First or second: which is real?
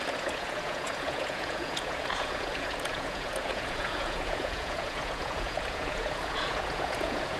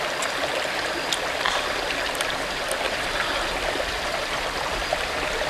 second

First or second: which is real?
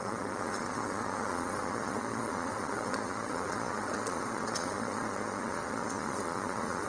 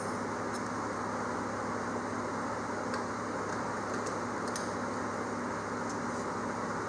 second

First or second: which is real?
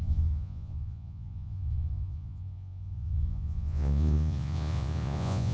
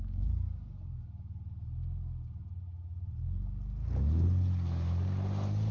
second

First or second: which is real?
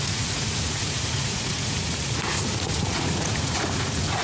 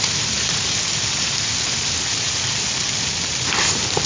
second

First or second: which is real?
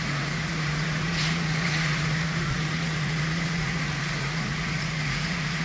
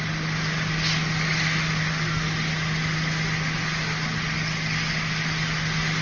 second